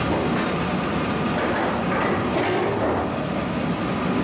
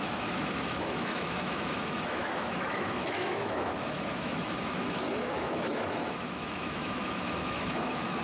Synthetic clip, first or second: second